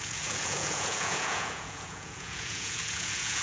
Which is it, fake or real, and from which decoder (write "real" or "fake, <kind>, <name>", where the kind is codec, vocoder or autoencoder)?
fake, vocoder, Vocos